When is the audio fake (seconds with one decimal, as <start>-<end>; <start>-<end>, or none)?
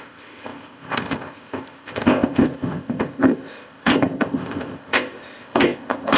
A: 0.0-6.2